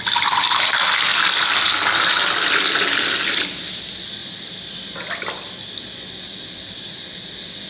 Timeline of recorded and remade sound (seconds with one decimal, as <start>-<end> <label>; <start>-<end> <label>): 0.0-7.7 recorded